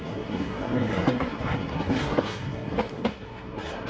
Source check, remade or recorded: remade